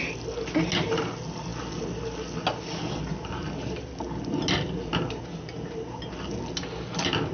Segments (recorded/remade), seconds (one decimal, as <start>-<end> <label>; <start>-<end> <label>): 0.0-7.3 recorded

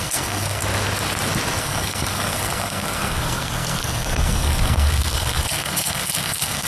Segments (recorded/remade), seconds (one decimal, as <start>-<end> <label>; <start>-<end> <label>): 0.0-0.6 remade; 0.6-1.6 recorded; 1.6-6.7 remade

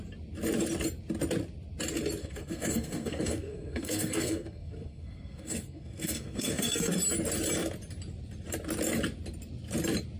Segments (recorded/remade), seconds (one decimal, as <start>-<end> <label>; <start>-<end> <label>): 0.0-2.2 recorded; 2.2-6.9 remade; 6.9-10.2 recorded

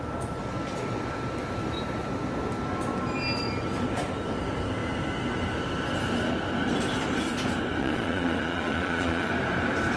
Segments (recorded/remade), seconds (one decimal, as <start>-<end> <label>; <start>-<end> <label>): 0.0-7.8 recorded; 7.8-9.3 remade; 9.3-10.0 recorded

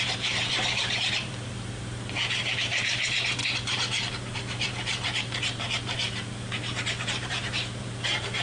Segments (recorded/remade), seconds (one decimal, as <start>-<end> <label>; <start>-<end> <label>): 0.0-3.4 remade; 3.4-4.1 recorded; 4.1-8.4 remade

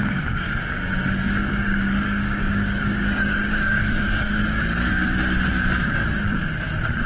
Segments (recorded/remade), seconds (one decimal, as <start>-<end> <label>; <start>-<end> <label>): 0.0-0.6 remade; 0.6-1.2 recorded; 1.2-4.6 remade; 4.6-7.1 recorded